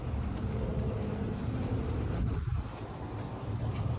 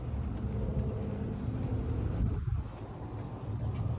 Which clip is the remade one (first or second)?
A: first